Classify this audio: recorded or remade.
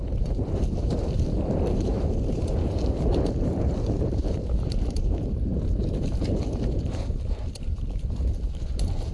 remade